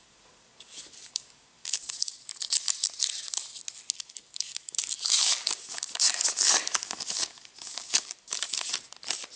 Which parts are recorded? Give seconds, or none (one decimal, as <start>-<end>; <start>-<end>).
2.3-4.0; 8.7-9.4